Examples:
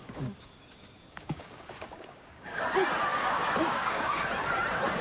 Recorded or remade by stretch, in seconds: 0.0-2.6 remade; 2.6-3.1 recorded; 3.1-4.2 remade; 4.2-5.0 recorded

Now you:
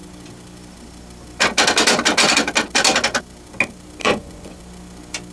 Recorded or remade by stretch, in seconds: 0.0-4.0 recorded; 4.0-4.6 remade; 4.6-5.3 recorded

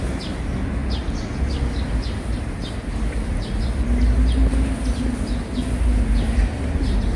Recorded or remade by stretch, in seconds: 0.0-7.2 recorded

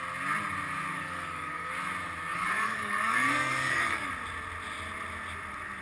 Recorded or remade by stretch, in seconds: 0.0-0.9 recorded; 0.9-1.7 remade; 1.7-2.3 recorded; 2.3-4.1 remade; 4.1-5.8 recorded

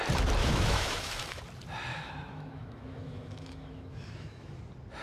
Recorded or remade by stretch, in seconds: 0.0-0.4 recorded; 0.4-1.4 remade; 1.4-1.9 recorded; 1.9-4.6 remade; 4.6-5.0 recorded

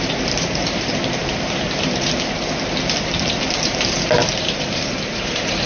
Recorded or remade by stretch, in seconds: 0.0-5.7 remade

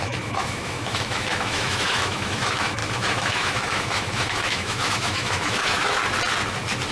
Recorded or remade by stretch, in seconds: 0.0-6.0 remade; 6.0-6.9 recorded